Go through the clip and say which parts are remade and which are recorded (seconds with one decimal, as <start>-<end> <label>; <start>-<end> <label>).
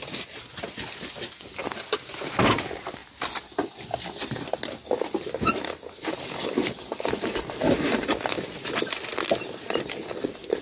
0.0-10.6 recorded